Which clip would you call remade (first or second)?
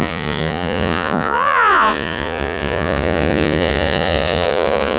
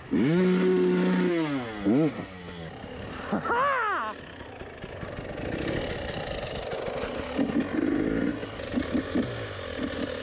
first